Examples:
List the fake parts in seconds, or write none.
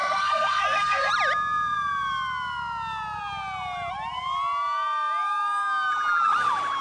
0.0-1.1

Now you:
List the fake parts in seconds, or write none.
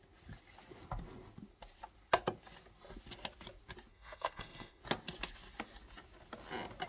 3.9-4.8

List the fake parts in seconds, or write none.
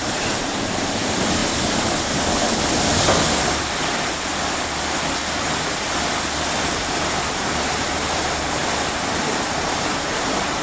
0.0-1.4; 6.6-8.6; 9.5-10.6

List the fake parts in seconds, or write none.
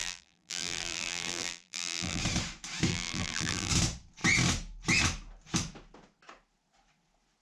0.0-2.2; 2.9-3.7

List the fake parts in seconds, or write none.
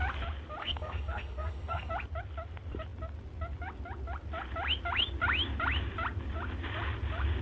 0.6-1.9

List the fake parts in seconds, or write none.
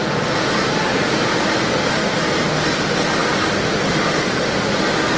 none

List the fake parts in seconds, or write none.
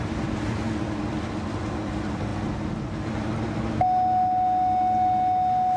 none